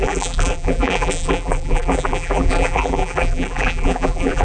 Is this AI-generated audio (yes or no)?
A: yes